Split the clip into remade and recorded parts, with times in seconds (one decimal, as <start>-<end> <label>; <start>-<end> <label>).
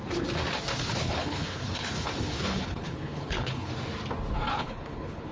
0.0-0.7 recorded; 0.7-3.7 remade; 3.7-4.5 recorded; 4.5-5.3 remade